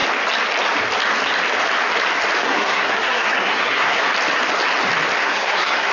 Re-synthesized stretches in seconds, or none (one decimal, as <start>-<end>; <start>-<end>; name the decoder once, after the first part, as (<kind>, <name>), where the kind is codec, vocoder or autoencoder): 2.4-4.0 (codec, SNAC); 5.2-5.9